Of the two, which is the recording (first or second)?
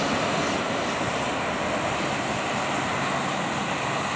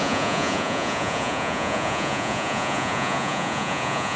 first